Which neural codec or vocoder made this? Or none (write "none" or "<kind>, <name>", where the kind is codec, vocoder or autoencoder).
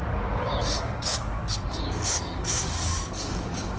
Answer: codec, DAC